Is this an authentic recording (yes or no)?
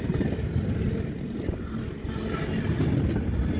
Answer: yes